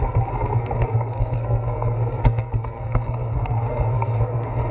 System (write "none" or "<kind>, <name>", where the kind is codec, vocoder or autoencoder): codec, SNAC